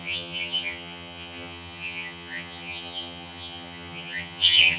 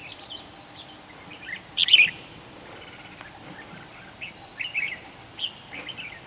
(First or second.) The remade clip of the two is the first